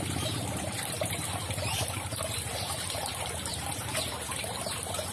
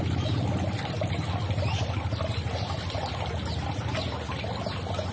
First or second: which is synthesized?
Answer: first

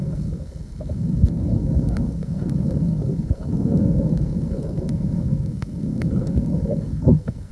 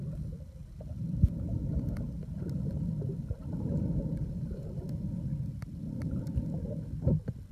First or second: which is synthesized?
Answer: first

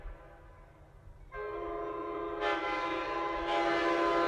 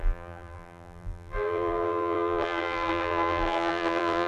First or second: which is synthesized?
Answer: second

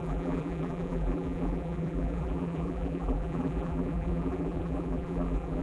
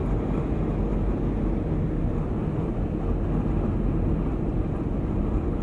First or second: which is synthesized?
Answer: first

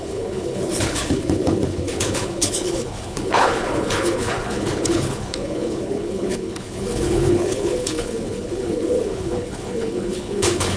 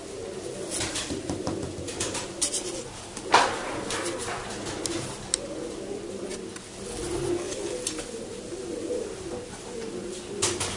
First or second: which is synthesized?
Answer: first